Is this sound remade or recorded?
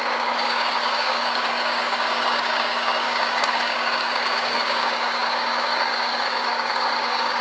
remade